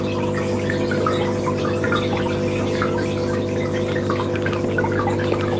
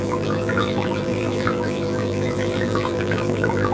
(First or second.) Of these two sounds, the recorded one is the first